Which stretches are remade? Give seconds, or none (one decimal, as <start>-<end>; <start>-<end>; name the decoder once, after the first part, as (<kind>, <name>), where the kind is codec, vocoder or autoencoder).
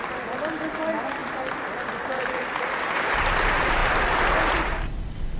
0.0-1.2 (vocoder, BigVGAN v2); 2.2-5.4